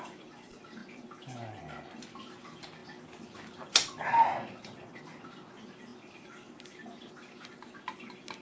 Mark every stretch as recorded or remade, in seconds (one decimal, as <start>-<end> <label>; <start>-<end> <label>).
0.0-8.4 recorded